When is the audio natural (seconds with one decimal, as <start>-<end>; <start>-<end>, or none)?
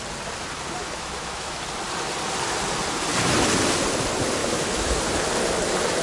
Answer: 0.0-0.8; 1.6-4.4; 5.0-6.0